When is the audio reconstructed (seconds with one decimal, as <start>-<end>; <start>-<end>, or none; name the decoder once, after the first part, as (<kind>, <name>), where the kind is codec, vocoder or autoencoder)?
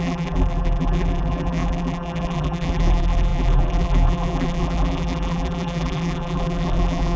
0.0-7.2 (vocoder, BigVGAN v2)